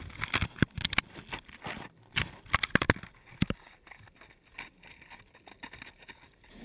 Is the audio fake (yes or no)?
no